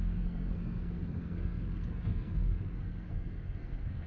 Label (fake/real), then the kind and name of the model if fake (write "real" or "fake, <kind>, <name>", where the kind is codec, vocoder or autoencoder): fake, codec, SNAC